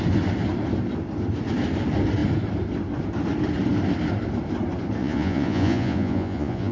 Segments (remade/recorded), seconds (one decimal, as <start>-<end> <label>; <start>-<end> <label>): 0.0-5.0 recorded; 5.0-6.7 remade